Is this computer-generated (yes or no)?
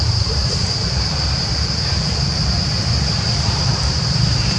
yes